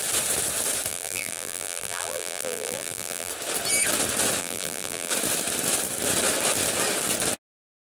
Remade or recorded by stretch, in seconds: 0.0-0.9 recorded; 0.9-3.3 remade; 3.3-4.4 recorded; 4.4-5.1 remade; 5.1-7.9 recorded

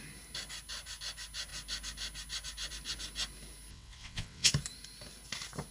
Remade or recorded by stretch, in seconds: 0.0-3.7 recorded; 3.7-4.5 remade; 4.5-5.7 recorded

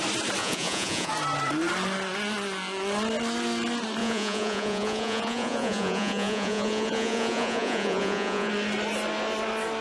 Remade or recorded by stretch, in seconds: 0.0-0.4 recorded; 0.4-1.1 remade; 1.1-4.0 recorded; 4.0-8.5 remade; 8.5-9.8 recorded

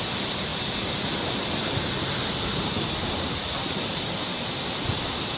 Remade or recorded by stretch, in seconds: 0.0-0.5 remade; 0.5-2.3 recorded; 2.3-5.4 remade

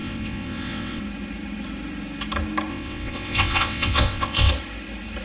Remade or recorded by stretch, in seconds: 0.0-1.0 remade; 1.0-2.7 recorded; 2.7-4.5 remade; 4.5-5.2 recorded

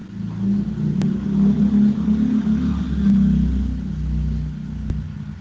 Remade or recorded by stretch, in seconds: 0.0-5.4 recorded

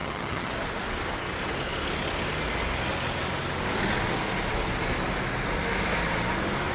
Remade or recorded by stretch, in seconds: 0.0-0.5 remade; 0.5-6.7 recorded